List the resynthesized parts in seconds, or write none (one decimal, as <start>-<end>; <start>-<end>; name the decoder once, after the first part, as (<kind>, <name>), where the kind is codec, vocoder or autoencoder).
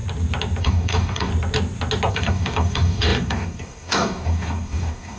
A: 0.6-1.3 (codec, DAC); 2.1-5.2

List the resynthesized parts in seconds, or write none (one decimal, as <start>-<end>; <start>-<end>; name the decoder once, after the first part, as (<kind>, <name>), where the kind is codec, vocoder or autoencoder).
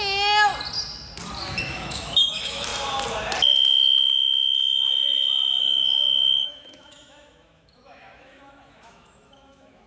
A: 0.0-0.5 (autoencoder, DAC-VAE); 1.6-2.7; 5.6-9.9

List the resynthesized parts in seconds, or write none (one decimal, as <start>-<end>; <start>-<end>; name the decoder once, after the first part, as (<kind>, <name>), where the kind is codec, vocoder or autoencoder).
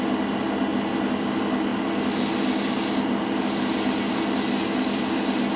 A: none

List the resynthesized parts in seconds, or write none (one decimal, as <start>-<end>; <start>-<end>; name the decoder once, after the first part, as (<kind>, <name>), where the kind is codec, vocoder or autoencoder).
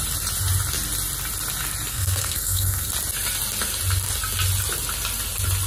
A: 1.9-2.9 (codec, SNAC)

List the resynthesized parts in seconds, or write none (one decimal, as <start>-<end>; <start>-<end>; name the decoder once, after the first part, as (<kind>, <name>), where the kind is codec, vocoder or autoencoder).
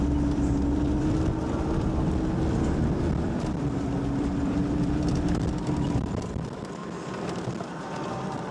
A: 0.0-6.8 (vocoder, BigVGAN v2); 7.7-8.5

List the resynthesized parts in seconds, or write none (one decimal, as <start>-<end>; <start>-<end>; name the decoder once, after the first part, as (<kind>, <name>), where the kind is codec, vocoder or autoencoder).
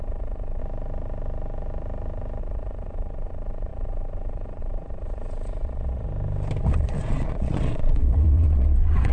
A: 0.0-0.6 (vocoder, Vocos); 2.4-6.1; 6.6-9.1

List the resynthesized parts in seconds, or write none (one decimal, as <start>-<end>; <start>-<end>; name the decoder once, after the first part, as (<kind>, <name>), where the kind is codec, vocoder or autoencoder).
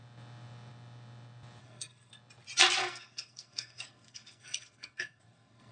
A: 1.6-2.1 (codec, SNAC); 2.8-5.7